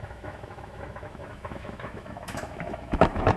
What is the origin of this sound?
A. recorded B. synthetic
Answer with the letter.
B